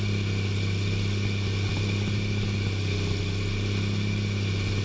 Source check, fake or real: real